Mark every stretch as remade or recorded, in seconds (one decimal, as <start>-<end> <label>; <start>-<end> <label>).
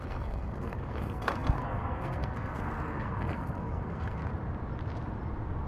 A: 0.0-4.2 remade; 4.2-5.7 recorded